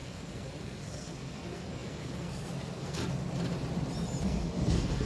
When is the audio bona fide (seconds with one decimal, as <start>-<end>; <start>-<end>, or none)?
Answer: 3.0-4.2